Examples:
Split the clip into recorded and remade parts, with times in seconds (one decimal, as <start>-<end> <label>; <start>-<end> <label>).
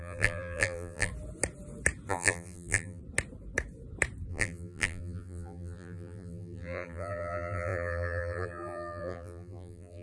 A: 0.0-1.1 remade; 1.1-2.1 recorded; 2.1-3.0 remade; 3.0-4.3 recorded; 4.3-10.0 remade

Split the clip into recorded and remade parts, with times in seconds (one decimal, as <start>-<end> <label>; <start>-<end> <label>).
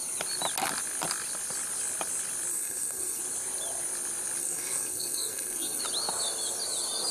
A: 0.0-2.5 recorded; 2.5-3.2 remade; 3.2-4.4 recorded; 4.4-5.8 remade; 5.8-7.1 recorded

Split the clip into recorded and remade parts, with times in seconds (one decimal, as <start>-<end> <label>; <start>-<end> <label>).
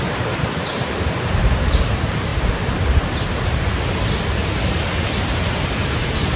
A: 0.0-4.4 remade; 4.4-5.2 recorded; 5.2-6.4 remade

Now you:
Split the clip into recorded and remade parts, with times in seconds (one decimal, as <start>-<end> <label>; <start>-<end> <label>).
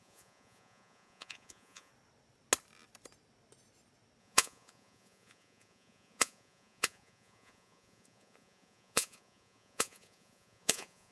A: 0.0-1.9 remade; 1.9-4.2 recorded; 4.2-11.1 remade